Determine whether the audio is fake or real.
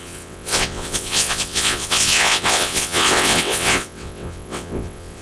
fake